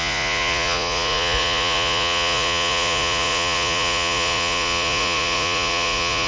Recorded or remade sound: remade